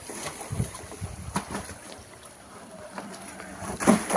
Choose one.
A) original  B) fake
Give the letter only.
B